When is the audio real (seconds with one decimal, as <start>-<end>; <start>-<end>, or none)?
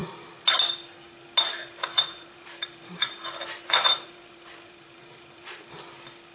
0.0-1.8; 5.6-6.3